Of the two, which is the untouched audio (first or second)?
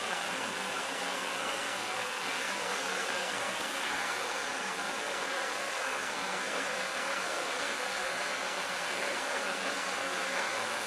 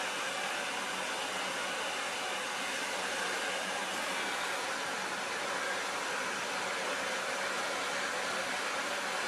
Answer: second